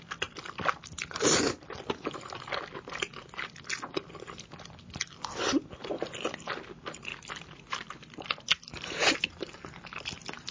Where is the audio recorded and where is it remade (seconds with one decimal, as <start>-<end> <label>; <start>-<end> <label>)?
0.0-10.5 recorded